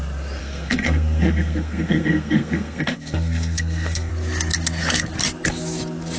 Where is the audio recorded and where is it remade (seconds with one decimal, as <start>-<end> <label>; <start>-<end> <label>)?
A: 0.0-0.4 recorded; 0.4-4.1 remade; 4.1-6.2 recorded